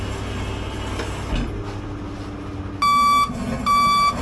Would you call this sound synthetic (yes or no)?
no